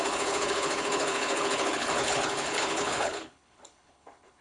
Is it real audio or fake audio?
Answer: fake